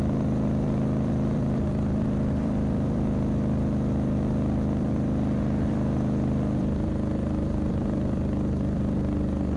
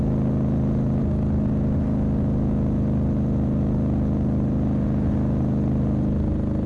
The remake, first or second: first